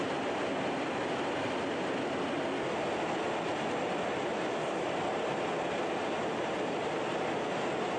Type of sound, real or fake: real